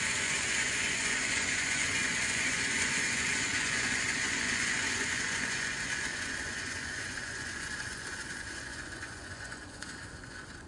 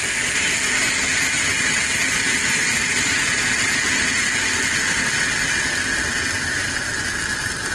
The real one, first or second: second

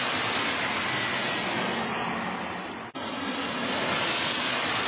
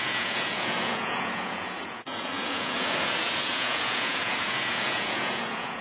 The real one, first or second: first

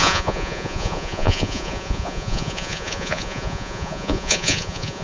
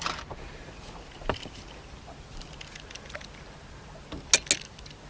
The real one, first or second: second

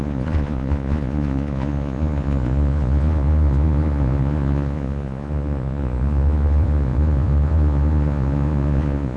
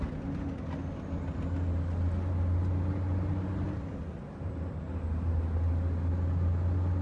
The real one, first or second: second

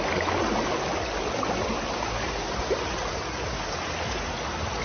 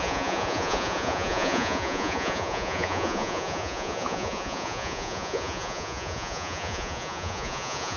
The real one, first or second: first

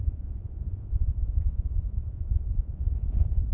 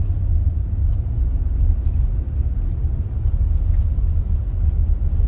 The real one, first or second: second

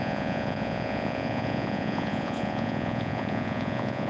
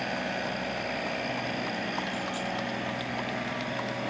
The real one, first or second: second